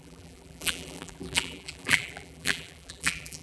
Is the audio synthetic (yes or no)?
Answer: yes